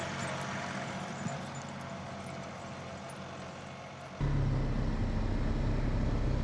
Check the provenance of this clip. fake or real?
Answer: real